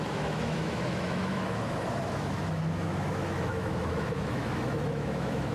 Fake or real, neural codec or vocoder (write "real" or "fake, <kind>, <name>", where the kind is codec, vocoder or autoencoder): fake, autoencoder, DAC-VAE